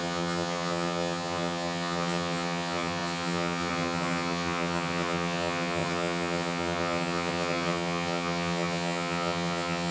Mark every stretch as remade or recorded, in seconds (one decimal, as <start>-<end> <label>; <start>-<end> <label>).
0.0-9.9 remade